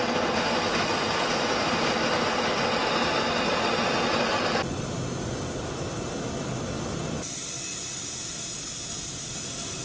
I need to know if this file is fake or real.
real